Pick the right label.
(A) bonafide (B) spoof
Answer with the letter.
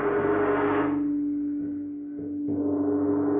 A